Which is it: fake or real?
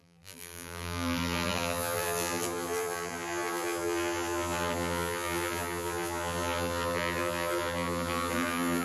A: fake